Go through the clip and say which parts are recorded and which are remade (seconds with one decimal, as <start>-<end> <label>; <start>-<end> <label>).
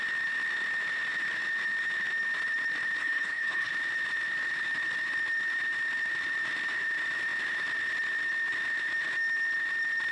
0.0-3.0 recorded; 3.0-3.7 remade; 3.7-10.1 recorded